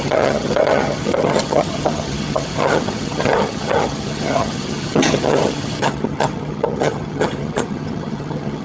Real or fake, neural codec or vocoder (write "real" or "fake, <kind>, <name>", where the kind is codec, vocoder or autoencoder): fake, vocoder, HiFi-GAN